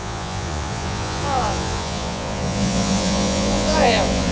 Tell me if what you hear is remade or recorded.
remade